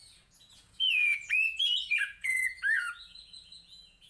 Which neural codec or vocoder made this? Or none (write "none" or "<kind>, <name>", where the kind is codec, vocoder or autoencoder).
vocoder, Vocos